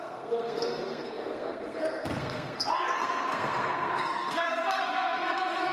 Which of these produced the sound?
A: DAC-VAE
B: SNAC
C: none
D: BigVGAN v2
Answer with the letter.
B